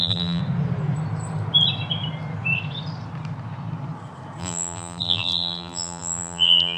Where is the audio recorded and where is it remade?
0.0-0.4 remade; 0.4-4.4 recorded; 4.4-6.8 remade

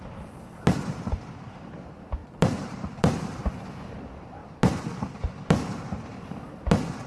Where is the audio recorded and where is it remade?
0.0-2.2 recorded; 2.2-3.9 remade; 3.9-7.1 recorded

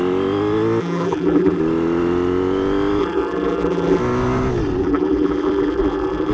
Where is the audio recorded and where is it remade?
0.0-0.8 recorded; 0.8-1.6 remade; 1.6-3.0 recorded; 3.0-4.0 remade; 4.0-4.8 recorded; 4.8-6.3 remade